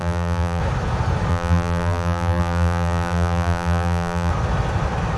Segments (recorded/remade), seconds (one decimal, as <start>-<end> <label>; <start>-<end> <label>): 0.0-0.6 remade; 0.6-1.3 recorded; 1.3-4.3 remade; 4.3-5.2 recorded